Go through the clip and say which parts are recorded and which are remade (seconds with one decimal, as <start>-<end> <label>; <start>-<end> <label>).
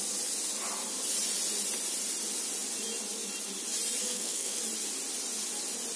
0.0-4.0 recorded; 4.0-4.6 remade; 4.6-6.0 recorded